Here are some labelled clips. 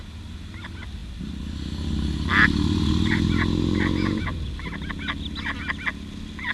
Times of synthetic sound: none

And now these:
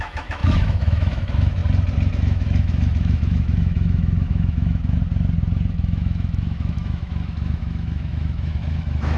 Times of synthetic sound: 0.0-1.6; 2.1-5.0; 5.7-9.2

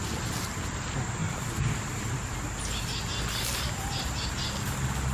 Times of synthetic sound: none

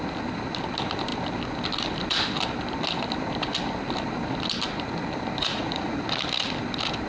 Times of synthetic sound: 5.4-6.0